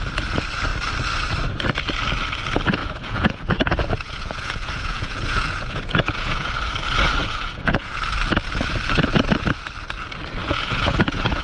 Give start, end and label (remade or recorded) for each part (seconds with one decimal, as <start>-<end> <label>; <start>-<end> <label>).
0.0-2.8 recorded; 2.8-6.5 remade; 6.5-7.2 recorded; 7.2-8.0 remade; 8.0-10.4 recorded; 10.4-11.4 remade